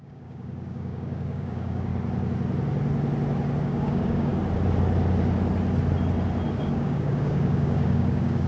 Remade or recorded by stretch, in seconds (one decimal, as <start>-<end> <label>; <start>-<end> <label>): 0.0-1.9 remade; 1.9-3.6 recorded; 3.6-4.3 remade; 4.3-6.6 recorded; 6.6-8.5 remade